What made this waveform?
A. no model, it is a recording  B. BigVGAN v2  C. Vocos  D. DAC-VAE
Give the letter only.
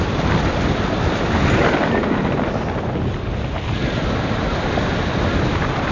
A